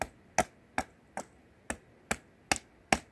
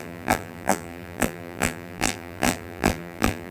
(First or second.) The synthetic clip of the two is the second